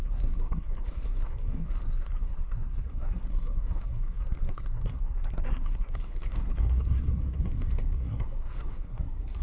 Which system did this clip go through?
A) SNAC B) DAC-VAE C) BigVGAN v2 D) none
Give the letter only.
A